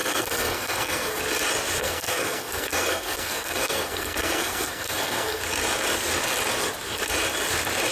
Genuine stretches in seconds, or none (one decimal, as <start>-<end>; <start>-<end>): 1.2-1.8; 5.4-7.9